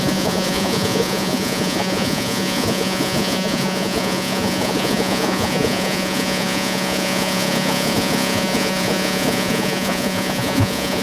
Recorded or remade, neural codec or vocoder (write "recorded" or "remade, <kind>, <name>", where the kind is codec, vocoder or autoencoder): remade, vocoder, Vocos